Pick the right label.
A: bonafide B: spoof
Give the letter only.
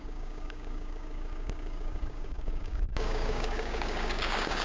B